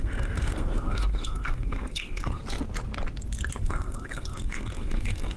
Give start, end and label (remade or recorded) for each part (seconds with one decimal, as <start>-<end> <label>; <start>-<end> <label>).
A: 0.0-2.4 remade; 2.4-3.6 recorded; 3.6-5.4 remade

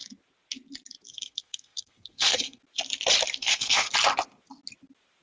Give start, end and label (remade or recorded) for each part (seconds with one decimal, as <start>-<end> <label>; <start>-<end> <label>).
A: 0.0-1.1 recorded; 1.1-2.6 remade; 2.6-3.4 recorded; 3.4-3.9 remade; 3.9-5.2 recorded

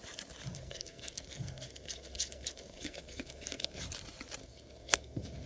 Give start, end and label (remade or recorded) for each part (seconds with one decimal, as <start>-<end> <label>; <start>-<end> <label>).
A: 0.0-0.5 recorded; 0.5-3.8 remade; 3.8-4.4 recorded; 4.4-5.5 remade

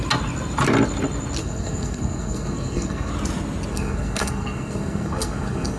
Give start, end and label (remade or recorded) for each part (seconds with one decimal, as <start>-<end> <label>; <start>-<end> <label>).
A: 0.0-1.4 recorded; 1.4-3.1 remade; 3.1-3.7 recorded; 3.7-5.8 remade

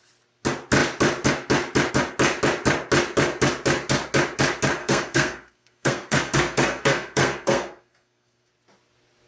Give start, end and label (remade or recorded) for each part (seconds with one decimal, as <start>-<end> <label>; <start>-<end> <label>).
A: 0.0-4.8 recorded; 4.8-8.5 remade; 8.5-9.3 recorded